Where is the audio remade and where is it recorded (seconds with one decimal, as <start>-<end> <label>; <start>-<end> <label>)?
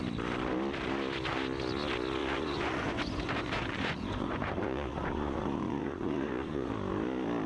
0.0-2.2 recorded; 2.2-6.7 remade; 6.7-7.5 recorded